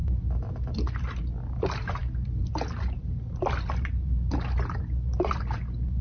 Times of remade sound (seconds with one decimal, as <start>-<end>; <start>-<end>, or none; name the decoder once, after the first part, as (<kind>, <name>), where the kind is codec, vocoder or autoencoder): none